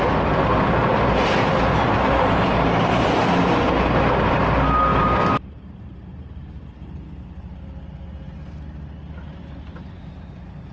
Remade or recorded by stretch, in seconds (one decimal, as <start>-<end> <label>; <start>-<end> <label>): 0.0-0.9 recorded; 0.9-3.2 remade; 3.2-4.9 recorded; 4.9-5.6 remade; 5.6-10.7 recorded